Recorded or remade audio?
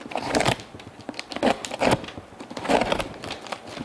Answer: recorded